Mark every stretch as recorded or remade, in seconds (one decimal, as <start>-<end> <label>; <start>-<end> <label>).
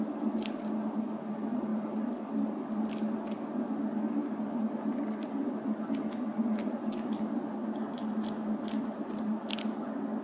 0.0-10.2 recorded